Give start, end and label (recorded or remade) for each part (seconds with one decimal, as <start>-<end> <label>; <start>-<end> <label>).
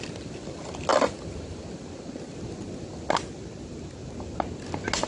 0.0-5.1 recorded